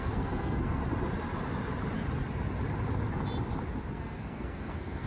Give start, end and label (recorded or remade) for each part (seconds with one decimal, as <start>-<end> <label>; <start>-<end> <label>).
0.0-0.8 remade; 0.8-3.9 recorded; 3.9-5.1 remade